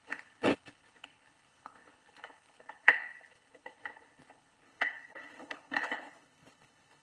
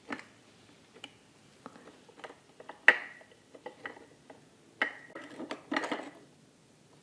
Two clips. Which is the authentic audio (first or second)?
second